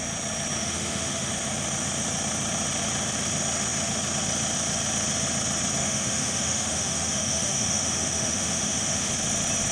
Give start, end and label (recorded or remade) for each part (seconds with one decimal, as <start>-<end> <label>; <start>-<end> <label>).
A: 0.0-0.6 recorded; 0.6-1.3 remade; 1.3-5.8 recorded; 5.8-9.1 remade; 9.1-9.7 recorded